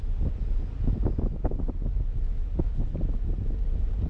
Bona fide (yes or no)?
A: yes